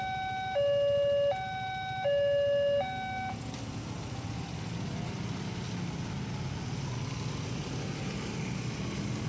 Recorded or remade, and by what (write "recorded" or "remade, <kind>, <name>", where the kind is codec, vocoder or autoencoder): recorded